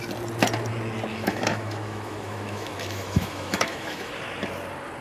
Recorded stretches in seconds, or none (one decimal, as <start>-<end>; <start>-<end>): 0.0-1.1; 4.1-5.0